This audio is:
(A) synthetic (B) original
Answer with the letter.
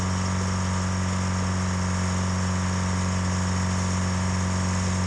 B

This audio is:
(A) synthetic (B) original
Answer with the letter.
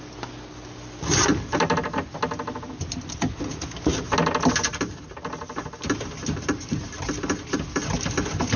B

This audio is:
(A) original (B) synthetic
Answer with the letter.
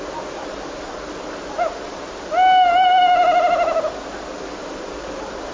A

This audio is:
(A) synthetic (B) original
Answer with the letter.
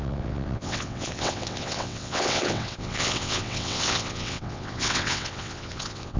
A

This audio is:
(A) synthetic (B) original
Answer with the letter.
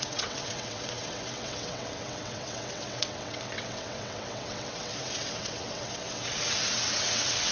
A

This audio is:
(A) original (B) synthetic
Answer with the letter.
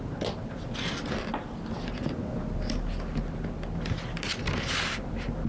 A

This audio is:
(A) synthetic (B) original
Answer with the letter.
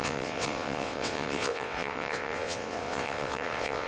A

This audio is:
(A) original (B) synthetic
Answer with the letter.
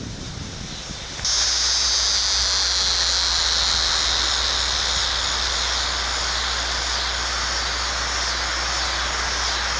A